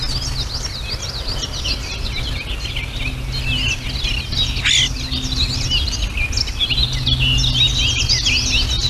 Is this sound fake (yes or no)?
no